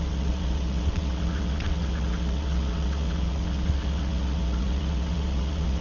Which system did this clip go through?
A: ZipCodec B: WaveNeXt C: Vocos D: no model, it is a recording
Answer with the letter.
B